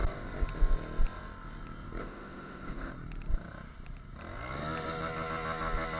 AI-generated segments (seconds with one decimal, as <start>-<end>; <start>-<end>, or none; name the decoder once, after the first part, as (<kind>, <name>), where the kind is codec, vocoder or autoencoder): 2.0-2.9 (autoencoder, DAC-VAE)